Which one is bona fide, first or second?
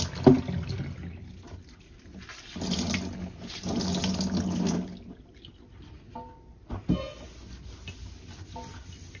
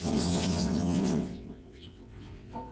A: first